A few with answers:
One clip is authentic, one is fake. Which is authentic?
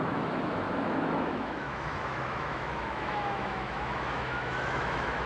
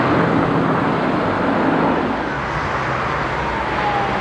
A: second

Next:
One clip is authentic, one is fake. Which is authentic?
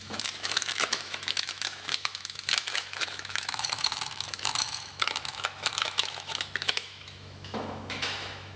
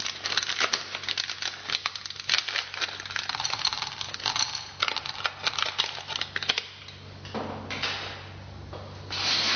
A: second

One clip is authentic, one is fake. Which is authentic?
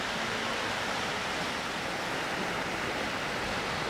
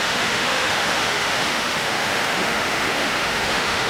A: first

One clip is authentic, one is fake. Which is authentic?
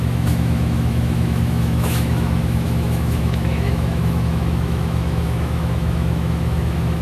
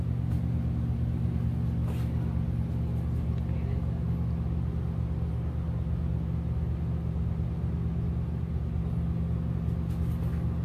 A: second